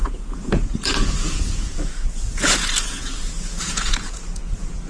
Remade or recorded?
remade